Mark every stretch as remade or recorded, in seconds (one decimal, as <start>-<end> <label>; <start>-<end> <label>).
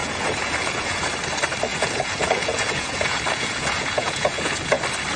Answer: 0.0-1.1 remade; 1.1-1.7 recorded; 1.7-4.8 remade; 4.8-5.2 recorded